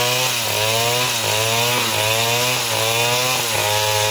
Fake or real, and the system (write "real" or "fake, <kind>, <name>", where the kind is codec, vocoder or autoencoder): real